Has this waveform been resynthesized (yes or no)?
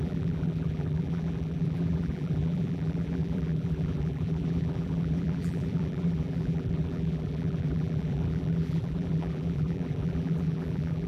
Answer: yes